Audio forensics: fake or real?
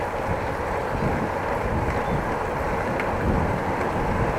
real